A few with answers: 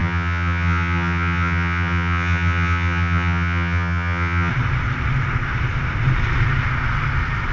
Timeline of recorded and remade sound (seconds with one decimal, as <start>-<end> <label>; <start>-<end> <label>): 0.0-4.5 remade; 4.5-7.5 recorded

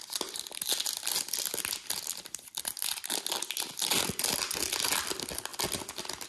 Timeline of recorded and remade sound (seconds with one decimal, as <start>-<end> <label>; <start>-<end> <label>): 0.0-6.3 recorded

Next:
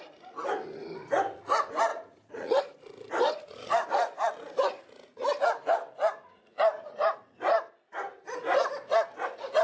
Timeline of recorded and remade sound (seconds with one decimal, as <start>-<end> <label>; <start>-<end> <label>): 0.0-1.9 recorded; 1.9-2.6 remade; 2.6-9.6 recorded